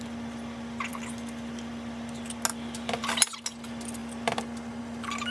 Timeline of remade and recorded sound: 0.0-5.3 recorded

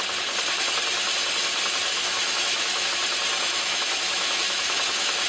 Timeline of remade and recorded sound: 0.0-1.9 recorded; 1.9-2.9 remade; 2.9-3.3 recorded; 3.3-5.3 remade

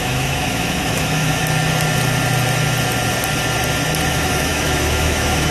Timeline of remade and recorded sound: 0.0-1.4 remade; 1.4-4.1 recorded; 4.1-5.5 remade

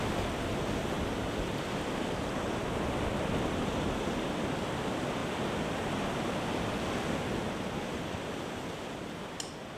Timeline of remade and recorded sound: 0.0-9.8 recorded

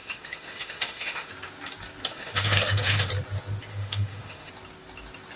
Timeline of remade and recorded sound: 0.0-1.3 remade; 1.3-2.1 recorded; 2.1-3.1 remade; 3.1-3.7 recorded; 3.7-4.5 remade; 4.5-5.4 recorded

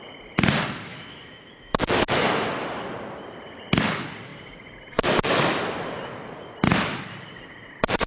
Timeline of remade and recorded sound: 0.0-0.9 recorded; 0.9-2.2 remade; 2.2-8.1 recorded

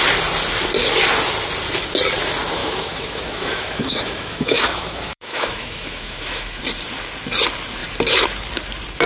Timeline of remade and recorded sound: 0.0-2.6 recorded; 2.6-6.6 remade; 6.6-9.1 recorded

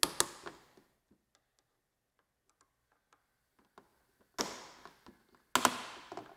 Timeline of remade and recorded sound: 0.0-6.4 recorded